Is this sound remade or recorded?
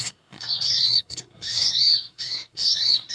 remade